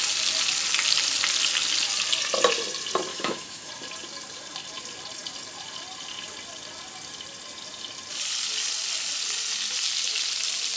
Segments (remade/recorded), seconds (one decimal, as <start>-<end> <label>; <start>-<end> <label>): 0.0-3.1 recorded; 3.1-3.7 remade; 3.7-10.8 recorded